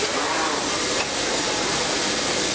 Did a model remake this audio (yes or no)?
no